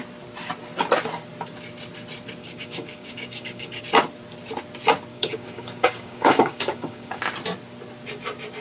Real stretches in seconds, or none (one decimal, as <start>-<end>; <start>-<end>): 0.0-2.4; 3.8-5.1; 7.2-8.6